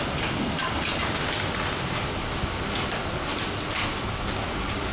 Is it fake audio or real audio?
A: real